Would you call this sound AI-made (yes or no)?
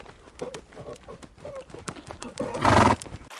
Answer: no